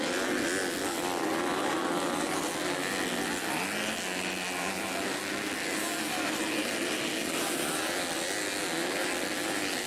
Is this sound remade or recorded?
recorded